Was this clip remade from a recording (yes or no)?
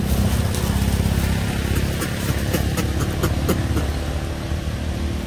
no